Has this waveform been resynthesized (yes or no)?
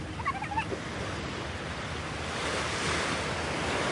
no